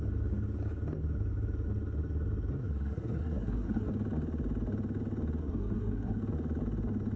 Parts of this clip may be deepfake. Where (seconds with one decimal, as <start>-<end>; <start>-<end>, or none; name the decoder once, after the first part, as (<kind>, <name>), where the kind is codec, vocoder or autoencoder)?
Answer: 2.6-3.9 (codec, SNAC); 5.4-6.2